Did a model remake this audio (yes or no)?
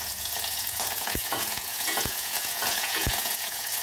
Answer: yes